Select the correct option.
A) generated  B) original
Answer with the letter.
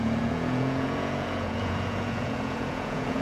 A